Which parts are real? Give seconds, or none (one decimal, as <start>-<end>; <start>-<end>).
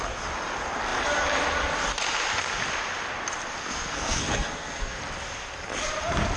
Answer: 0.0-3.6; 5.0-6.4